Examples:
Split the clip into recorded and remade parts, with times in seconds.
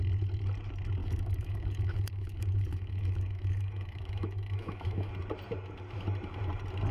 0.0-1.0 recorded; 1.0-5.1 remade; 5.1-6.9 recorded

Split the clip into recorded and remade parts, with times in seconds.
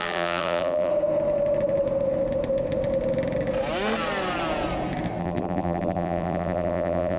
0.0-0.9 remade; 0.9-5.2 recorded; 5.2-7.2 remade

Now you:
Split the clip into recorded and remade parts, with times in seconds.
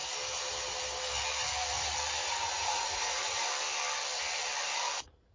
0.0-2.2 recorded; 2.2-3.5 remade; 3.5-5.3 recorded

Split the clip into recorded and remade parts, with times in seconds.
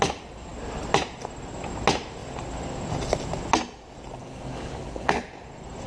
0.0-4.2 recorded; 4.2-5.1 remade; 5.1-5.9 recorded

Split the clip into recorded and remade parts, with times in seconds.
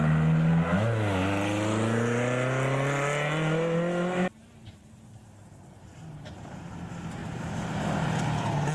0.0-7.2 recorded; 7.2-7.7 remade; 7.7-8.7 recorded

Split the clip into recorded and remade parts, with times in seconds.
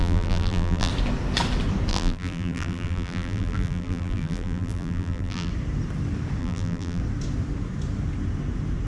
0.0-0.9 remade; 0.9-1.9 recorded; 1.9-5.5 remade; 5.5-6.4 recorded; 6.4-7.0 remade; 7.0-8.9 recorded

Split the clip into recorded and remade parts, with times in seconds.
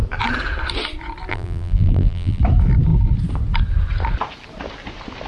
0.0-1.3 recorded; 1.3-2.4 remade; 2.4-5.3 recorded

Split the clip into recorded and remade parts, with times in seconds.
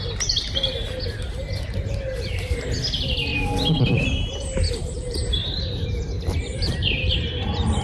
0.0-3.3 recorded; 3.3-7.8 remade